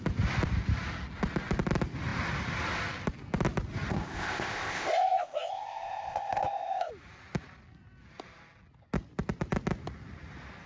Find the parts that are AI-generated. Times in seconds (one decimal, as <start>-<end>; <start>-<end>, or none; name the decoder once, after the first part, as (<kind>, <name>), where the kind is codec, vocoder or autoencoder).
3.9-6.9 (codec, ZipCodec)